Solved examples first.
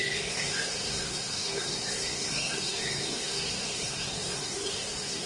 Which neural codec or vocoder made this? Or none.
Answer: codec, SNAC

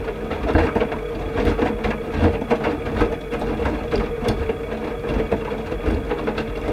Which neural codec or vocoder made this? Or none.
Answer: none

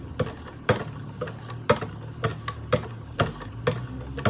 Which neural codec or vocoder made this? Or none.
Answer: none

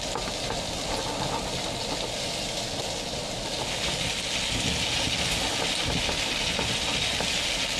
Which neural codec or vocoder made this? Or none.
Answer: none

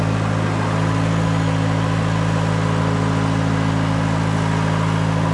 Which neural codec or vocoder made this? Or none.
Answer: none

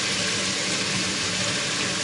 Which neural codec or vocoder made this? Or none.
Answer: none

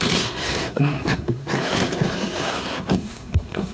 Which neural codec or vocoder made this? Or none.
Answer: codec, SNAC